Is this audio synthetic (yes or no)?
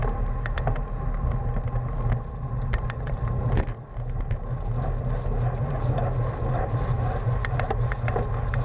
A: no